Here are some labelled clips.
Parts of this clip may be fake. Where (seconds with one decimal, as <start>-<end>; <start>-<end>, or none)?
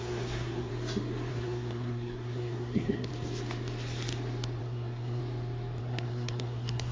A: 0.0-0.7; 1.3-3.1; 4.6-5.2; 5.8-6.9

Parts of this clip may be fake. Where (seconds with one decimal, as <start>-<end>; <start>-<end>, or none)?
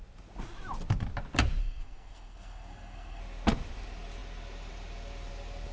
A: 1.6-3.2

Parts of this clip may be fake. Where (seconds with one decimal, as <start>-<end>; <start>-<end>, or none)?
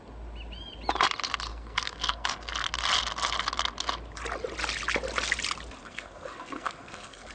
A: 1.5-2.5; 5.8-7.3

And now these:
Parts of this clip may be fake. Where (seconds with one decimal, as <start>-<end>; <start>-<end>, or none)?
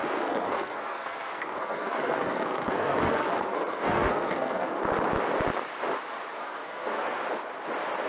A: 0.0-4.8; 6.4-7.2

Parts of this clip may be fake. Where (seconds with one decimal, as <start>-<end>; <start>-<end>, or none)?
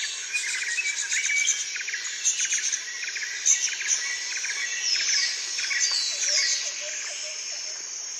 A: none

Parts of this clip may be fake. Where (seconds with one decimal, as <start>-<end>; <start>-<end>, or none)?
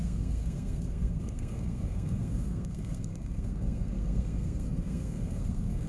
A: 0.0-5.9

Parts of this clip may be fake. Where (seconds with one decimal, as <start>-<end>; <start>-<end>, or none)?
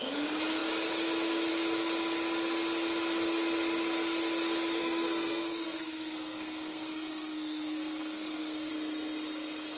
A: 4.8-8.7